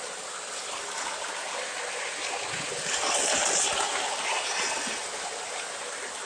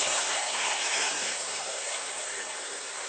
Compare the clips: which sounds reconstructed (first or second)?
second